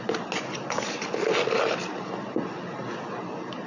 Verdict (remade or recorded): recorded